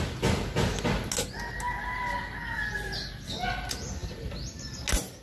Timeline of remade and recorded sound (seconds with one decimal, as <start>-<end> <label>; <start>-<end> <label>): 0.0-5.2 recorded